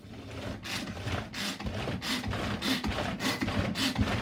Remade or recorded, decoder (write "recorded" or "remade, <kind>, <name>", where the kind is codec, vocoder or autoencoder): recorded